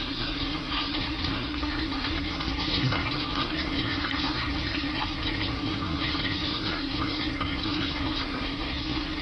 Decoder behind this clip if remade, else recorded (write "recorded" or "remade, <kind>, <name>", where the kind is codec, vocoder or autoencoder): remade, codec, SNAC